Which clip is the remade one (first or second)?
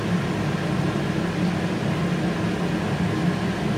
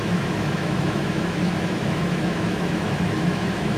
second